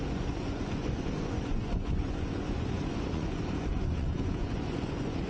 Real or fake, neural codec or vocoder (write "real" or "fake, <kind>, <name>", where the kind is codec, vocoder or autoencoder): fake, vocoder, Vocos